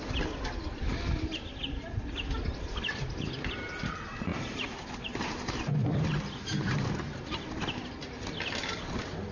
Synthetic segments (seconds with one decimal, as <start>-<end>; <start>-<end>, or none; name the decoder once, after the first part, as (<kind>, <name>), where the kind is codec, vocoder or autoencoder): none